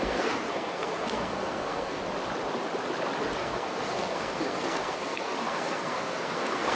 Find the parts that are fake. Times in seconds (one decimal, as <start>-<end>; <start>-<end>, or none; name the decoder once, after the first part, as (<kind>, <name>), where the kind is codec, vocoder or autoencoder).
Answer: 0.0-2.0 (codec, SNAC); 3.4-6.8